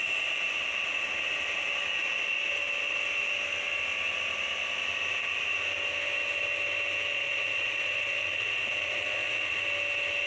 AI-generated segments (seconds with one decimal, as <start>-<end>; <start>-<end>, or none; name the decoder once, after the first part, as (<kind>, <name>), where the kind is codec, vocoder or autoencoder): 7.1-9.6 (vocoder, Vocos)